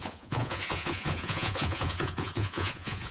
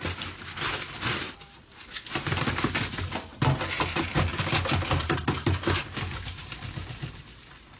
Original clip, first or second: second